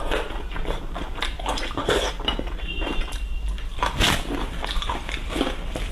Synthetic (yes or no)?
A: yes